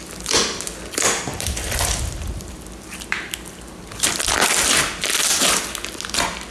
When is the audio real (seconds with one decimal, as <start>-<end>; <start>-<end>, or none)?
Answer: 0.0-1.3; 4.5-6.5